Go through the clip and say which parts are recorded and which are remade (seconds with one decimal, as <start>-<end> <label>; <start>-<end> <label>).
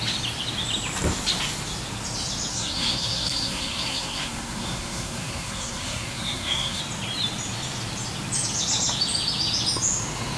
0.0-2.5 recorded; 2.5-6.8 remade; 6.8-10.4 recorded